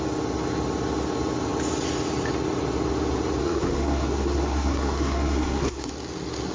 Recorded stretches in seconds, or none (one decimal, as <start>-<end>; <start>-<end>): 0.0-3.4; 5.9-6.5